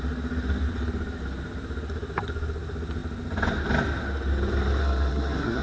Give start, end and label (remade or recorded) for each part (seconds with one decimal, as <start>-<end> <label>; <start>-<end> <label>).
0.0-4.8 recorded; 4.8-5.6 remade